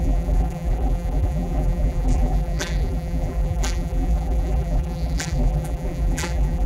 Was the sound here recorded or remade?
remade